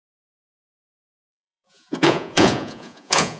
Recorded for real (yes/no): no